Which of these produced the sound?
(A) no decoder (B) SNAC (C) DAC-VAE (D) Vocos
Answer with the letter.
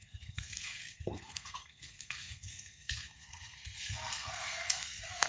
B